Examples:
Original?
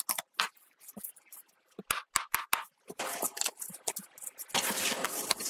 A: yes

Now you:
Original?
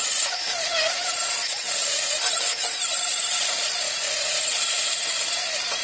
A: yes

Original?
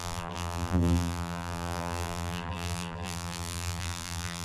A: no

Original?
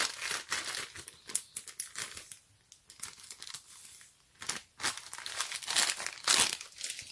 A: yes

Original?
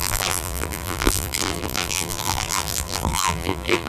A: no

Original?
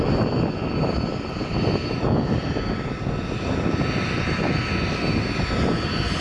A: yes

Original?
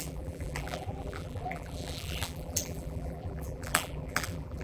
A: no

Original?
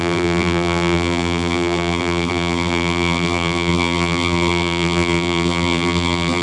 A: no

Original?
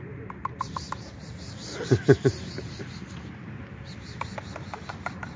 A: no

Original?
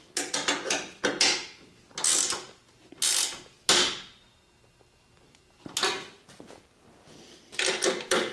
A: yes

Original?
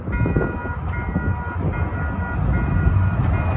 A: yes